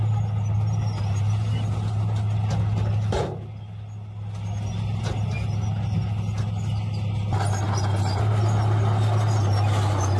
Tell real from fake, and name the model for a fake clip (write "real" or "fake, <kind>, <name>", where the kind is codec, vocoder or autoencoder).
real